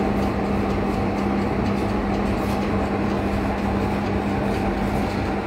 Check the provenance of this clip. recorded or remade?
recorded